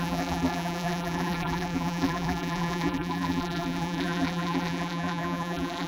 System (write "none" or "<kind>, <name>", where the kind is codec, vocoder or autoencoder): vocoder, BigVGAN v2